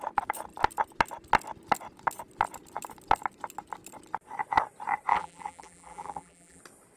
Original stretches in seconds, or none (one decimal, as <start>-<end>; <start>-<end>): 0.0-5.1; 6.6-7.0